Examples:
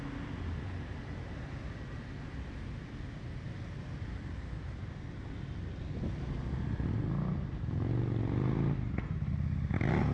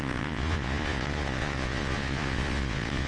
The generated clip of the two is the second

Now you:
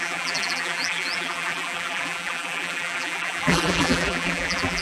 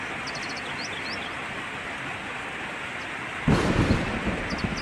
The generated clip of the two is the first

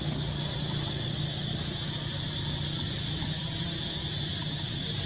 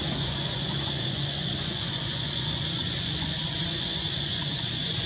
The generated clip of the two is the second